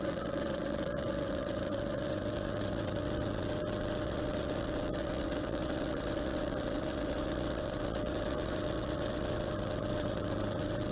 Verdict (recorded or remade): remade